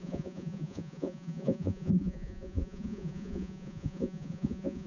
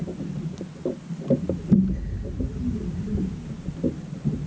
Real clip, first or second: second